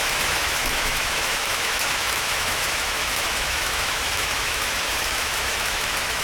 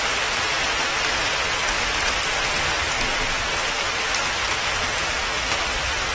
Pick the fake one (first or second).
first